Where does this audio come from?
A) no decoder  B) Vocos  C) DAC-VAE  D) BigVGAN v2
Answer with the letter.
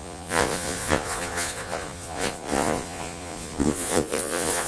B